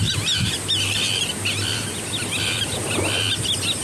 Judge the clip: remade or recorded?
recorded